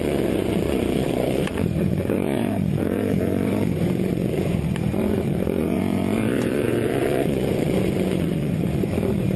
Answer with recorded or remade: remade